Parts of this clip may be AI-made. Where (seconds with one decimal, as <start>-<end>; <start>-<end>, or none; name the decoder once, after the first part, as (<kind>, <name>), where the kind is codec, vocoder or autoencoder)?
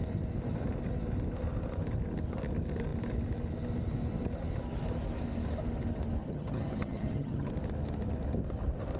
6.2-7.5 (vocoder, HiFi-GAN)